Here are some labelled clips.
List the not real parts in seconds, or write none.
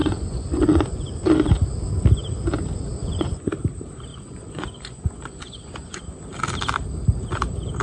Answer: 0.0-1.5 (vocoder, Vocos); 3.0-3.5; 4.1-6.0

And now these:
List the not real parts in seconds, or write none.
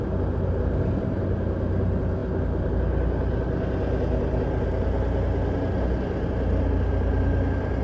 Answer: none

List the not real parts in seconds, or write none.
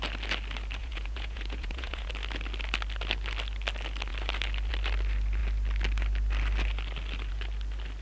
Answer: 0.8-2.1 (vocoder, Vocos)